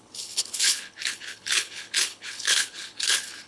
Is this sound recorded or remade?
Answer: remade